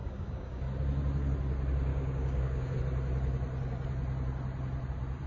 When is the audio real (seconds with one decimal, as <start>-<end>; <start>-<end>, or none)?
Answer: 0.6-1.9; 2.8-5.3